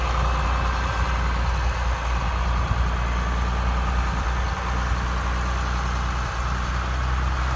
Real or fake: real